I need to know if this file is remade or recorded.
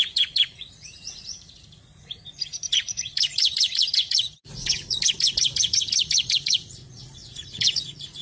remade